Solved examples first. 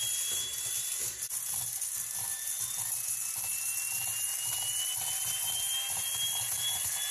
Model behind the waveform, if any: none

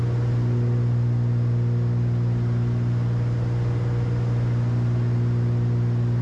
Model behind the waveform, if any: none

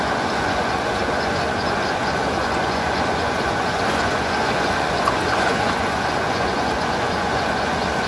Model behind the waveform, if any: vocoder, Vocos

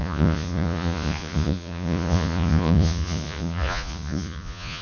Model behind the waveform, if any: vocoder, Vocos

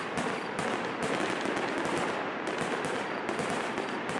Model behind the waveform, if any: none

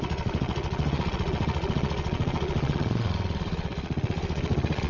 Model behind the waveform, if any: vocoder, Vocos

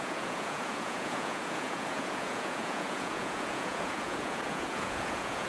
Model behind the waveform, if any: vocoder, Vocos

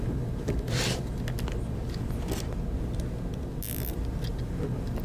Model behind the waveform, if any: none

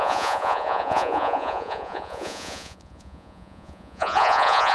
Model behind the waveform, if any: vocoder, Vocos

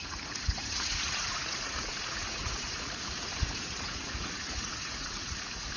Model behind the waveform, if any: vocoder, Vocos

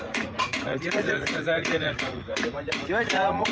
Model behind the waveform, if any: vocoder, Vocos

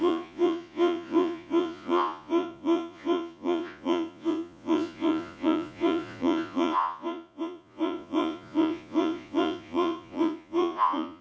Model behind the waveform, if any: vocoder, Vocos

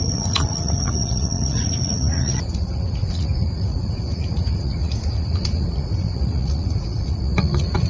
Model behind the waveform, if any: vocoder, Vocos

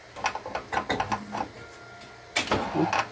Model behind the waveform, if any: none